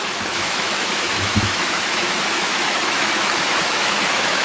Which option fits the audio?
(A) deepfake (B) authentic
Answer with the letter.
A